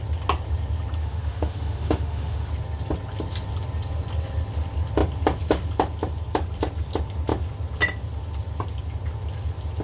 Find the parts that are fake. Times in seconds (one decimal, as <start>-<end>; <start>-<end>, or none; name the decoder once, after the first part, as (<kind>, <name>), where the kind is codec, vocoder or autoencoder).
1.0-2.5 (autoencoder, DAC-VAE)